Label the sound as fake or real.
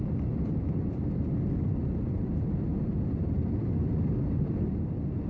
fake